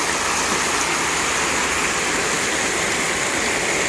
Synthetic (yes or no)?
no